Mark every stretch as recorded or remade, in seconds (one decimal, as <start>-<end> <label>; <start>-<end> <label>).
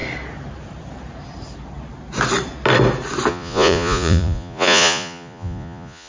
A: 0.0-3.3 recorded; 3.3-6.1 remade